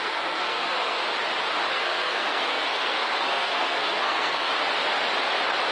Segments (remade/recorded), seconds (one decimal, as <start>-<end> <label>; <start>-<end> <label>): 0.0-1.0 remade; 1.0-1.7 recorded; 1.7-4.5 remade; 4.5-5.7 recorded